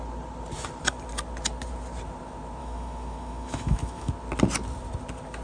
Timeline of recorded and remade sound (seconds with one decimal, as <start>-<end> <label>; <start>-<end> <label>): 0.0-2.6 recorded; 2.6-4.1 remade; 4.1-5.4 recorded